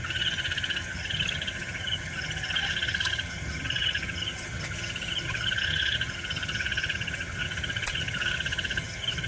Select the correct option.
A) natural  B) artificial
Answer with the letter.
B